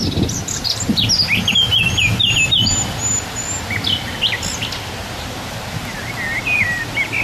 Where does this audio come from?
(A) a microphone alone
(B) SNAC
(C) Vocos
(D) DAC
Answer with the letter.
A